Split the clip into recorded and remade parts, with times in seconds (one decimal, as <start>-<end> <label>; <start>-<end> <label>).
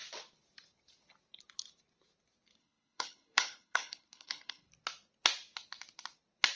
0.0-2.6 recorded; 2.6-4.7 remade; 4.7-6.6 recorded